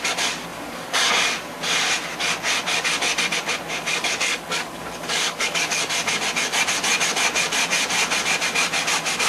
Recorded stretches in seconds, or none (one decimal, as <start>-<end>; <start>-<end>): 0.0-0.5; 1.1-3.9; 5.8-9.3